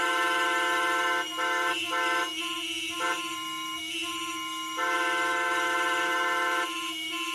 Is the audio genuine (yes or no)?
no